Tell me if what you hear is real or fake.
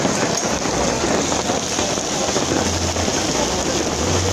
real